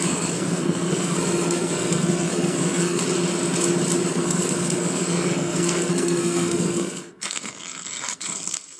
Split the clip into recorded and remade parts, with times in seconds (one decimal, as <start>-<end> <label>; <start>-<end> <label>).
0.0-3.0 remade; 3.0-4.1 recorded; 4.1-8.8 remade